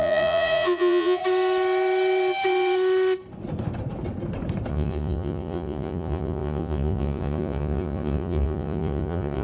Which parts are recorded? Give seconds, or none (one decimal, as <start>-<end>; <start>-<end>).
1.2-4.7